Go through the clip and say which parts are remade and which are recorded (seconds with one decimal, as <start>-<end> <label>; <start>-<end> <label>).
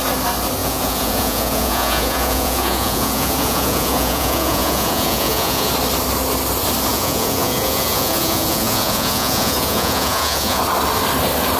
0.0-0.6 recorded; 0.6-5.7 remade; 5.7-6.9 recorded; 6.9-10.6 remade; 10.6-11.6 recorded